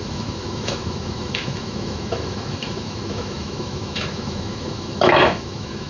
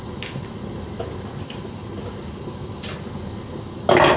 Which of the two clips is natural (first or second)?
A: second